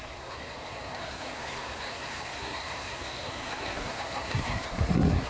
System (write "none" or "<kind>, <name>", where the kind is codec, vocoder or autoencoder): codec, SNAC